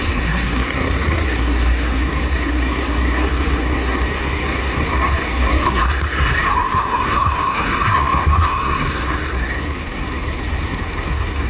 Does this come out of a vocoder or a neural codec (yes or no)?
yes